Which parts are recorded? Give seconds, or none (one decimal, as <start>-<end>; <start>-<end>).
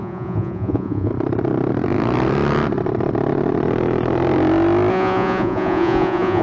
1.1-4.9